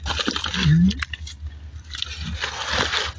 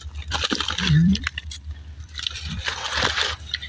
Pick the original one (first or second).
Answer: first